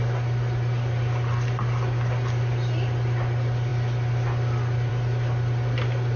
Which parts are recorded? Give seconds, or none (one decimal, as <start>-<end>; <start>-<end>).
0.0-6.2